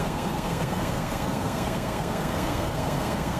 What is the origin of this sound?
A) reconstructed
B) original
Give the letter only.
A